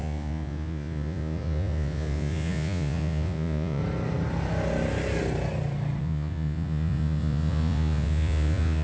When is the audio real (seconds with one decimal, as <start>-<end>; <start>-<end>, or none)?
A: 3.8-6.0